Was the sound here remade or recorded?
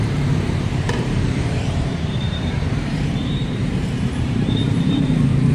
remade